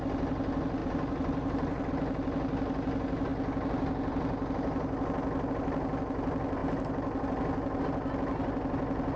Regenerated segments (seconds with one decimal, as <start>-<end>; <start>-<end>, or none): 0.8-1.9